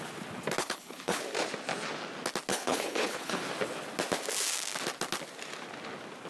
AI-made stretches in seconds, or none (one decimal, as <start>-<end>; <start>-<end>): 0.6-1.2; 2.5-3.4